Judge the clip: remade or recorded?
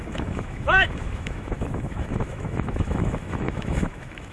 remade